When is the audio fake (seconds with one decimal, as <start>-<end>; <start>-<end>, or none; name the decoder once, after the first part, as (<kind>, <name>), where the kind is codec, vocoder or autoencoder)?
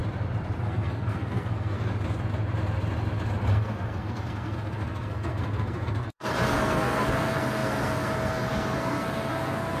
0.6-1.8 (codec, SNAC); 3.5-9.8